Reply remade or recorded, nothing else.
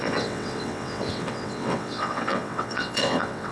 remade